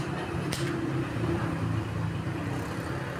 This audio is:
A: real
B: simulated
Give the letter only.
A